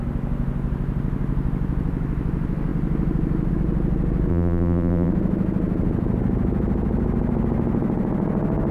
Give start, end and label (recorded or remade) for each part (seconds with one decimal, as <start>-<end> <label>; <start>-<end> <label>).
0.0-4.3 recorded; 4.3-5.1 remade; 5.1-8.7 recorded